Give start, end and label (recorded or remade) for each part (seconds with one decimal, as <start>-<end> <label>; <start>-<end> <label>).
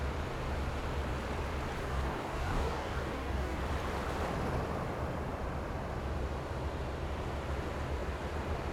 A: 0.0-1.8 recorded; 1.8-3.6 remade; 3.6-8.7 recorded